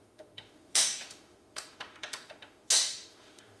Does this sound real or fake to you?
fake